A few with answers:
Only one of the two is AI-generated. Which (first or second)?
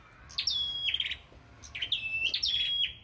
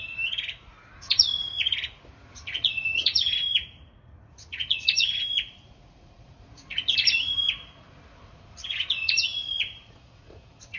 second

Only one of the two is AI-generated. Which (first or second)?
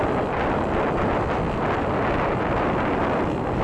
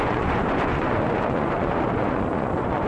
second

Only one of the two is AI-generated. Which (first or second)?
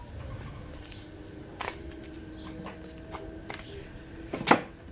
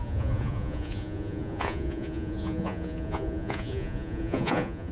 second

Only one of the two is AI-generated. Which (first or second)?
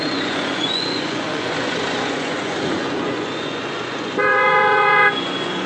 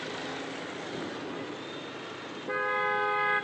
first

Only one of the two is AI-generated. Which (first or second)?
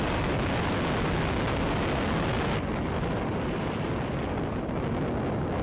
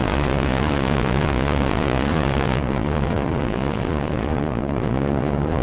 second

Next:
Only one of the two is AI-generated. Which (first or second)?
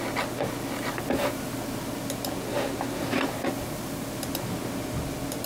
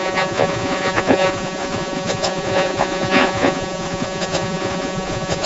second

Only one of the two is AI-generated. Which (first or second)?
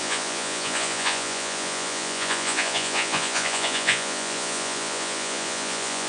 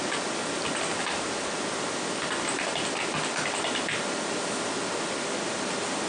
first